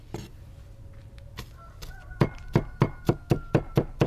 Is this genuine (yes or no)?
yes